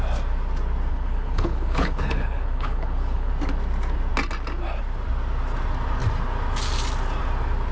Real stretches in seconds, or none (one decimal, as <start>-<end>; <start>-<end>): 0.0-0.9; 3.3-7.7

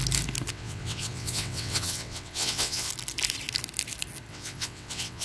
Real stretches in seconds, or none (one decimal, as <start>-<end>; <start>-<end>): 0.0-0.5; 2.9-4.3